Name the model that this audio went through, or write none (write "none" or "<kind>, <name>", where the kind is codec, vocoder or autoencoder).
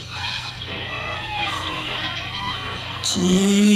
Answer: codec, SNAC